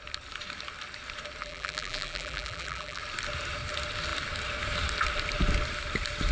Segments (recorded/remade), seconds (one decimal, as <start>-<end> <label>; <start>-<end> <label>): 0.0-1.4 recorded; 1.4-3.0 remade; 3.0-6.3 recorded